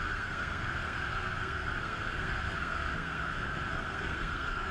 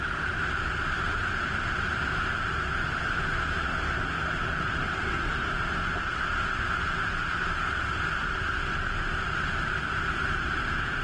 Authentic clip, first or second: second